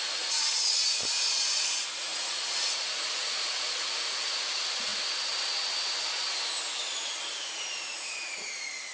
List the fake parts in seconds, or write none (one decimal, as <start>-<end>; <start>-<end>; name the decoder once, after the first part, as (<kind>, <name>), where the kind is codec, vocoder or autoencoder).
0.0-4.9 (vocoder, Vocos); 6.9-8.9